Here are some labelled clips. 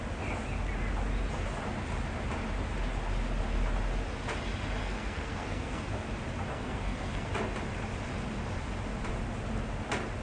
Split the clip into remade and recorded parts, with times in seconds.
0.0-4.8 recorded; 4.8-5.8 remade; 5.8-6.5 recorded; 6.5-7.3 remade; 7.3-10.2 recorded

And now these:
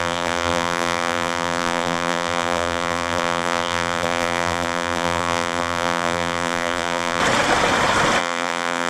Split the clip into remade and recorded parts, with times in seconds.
0.0-7.2 remade; 7.2-8.2 recorded; 8.2-8.9 remade

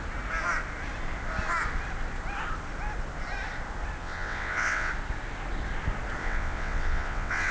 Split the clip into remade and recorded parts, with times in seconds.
0.0-4.0 recorded; 4.0-4.9 remade; 4.9-6.2 recorded; 6.2-7.5 remade